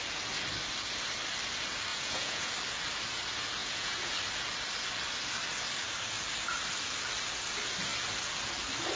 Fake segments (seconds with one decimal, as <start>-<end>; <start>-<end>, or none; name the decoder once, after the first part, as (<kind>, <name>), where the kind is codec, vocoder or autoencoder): 1.9-2.5 (vocoder, Vocos); 3.6-4.1